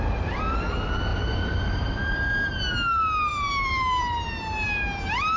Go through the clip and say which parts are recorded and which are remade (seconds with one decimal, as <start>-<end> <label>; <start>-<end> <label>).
0.0-1.1 recorded; 1.1-2.0 remade; 2.0-3.3 recorded; 3.3-4.3 remade; 4.3-5.4 recorded